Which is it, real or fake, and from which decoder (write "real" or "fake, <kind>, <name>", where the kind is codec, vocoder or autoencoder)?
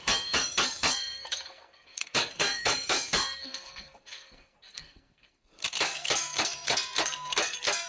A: fake, codec, SNAC